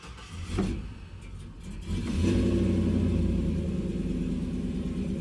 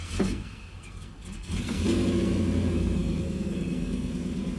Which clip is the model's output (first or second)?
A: second